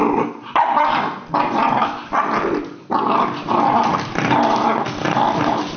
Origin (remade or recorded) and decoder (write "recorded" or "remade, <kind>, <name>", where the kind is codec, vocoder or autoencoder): remade, vocoder, BigVGAN v2